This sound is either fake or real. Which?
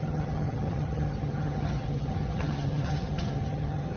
fake